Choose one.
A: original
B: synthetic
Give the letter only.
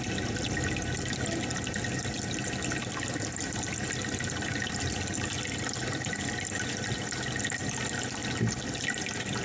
A